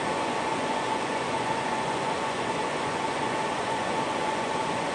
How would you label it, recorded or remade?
remade